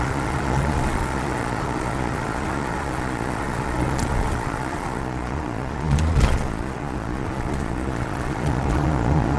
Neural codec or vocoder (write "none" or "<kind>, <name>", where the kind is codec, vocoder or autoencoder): vocoder, Vocos